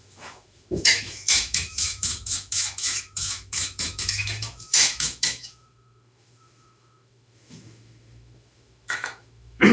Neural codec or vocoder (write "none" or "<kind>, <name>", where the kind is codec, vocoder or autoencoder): autoencoder, DAC-VAE